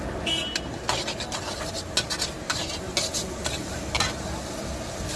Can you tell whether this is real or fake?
real